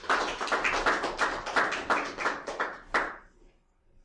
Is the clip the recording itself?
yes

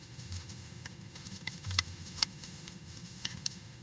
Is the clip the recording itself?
no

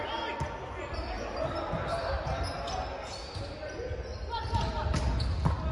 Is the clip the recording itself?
yes